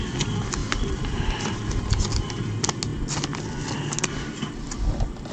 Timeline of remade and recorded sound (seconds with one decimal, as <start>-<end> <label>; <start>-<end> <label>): 0.0-0.6 recorded; 0.6-1.9 remade; 1.9-5.3 recorded